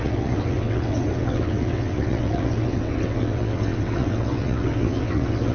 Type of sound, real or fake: fake